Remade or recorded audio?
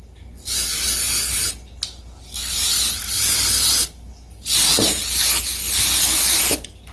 recorded